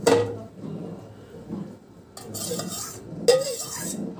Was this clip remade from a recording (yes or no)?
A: no